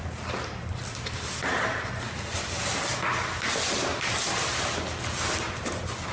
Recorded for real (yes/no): yes